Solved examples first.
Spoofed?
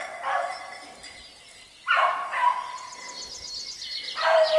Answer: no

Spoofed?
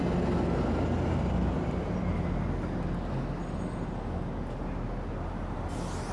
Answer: no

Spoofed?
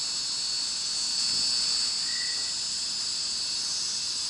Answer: no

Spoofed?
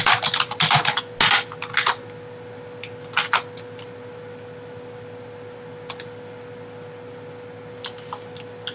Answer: no